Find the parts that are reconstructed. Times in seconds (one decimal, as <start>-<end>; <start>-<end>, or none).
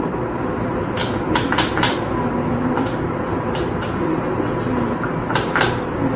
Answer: none